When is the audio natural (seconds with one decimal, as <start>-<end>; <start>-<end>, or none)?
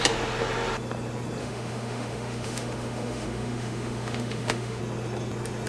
0.0-1.4; 4.8-5.7